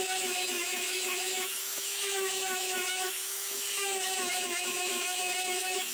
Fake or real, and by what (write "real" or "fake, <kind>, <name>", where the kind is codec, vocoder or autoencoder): fake, autoencoder, DAC-VAE